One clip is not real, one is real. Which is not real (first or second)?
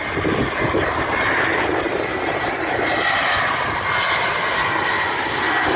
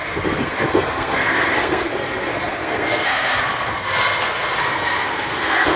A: second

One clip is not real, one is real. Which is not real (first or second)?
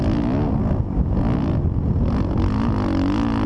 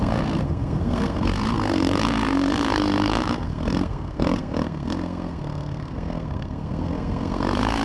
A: second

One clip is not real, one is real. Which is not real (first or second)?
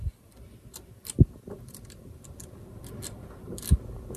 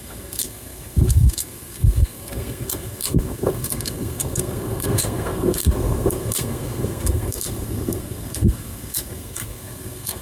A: second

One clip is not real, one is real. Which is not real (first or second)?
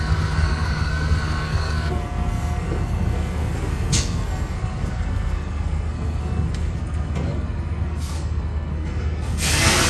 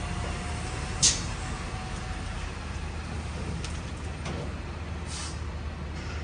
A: first